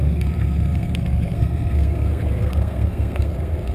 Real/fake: fake